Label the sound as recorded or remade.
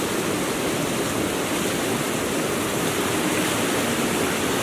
recorded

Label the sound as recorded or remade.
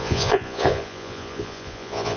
remade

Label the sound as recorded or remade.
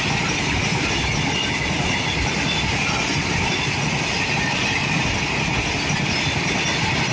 recorded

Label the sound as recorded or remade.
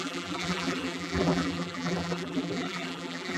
remade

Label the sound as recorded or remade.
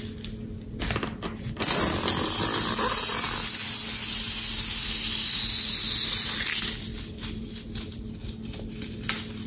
recorded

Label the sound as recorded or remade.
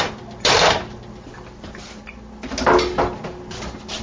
recorded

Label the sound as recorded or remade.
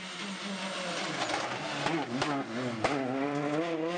recorded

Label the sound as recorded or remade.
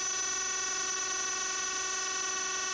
recorded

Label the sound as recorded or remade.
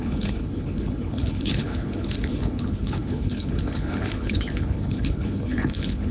remade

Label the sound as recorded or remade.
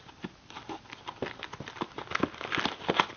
recorded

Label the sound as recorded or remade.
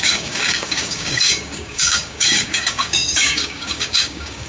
remade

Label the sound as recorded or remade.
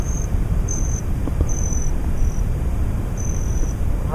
remade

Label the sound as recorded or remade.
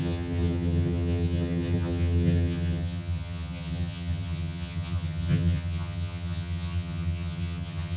remade